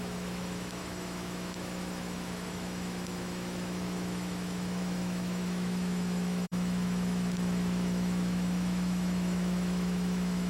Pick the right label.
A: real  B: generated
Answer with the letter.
B